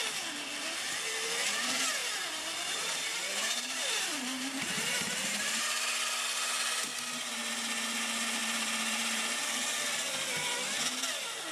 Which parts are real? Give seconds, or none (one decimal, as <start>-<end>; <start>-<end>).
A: 0.0-2.0; 5.6-8.4; 9.4-11.5

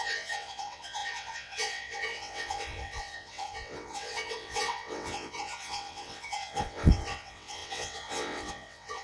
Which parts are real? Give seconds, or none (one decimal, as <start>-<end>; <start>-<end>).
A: none

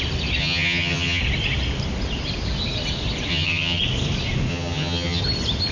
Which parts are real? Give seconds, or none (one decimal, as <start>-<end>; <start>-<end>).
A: 0.0-0.4; 1.2-3.3; 3.8-4.5; 5.2-5.7

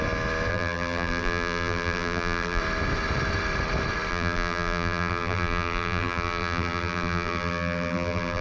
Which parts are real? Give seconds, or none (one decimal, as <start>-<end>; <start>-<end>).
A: 0.0-0.5; 2.6-4.1

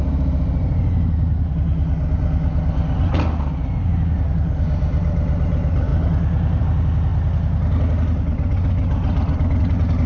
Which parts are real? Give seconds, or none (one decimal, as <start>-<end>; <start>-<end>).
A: 0.0-10.1

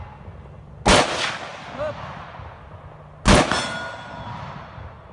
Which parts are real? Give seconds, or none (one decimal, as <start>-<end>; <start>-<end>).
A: 0.0-5.1

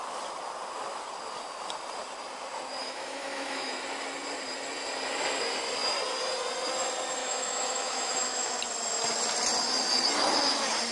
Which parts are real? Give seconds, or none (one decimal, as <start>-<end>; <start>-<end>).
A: 0.0-2.8; 3.7-7.2; 8.6-10.9